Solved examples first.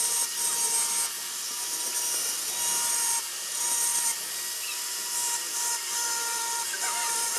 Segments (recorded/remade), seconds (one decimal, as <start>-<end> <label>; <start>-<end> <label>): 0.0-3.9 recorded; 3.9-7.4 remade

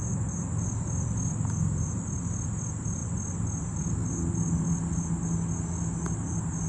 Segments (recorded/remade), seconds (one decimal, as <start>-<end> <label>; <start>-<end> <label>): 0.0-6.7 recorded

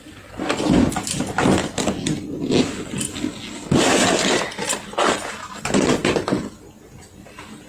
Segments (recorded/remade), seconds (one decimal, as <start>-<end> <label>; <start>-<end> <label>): 0.0-7.7 recorded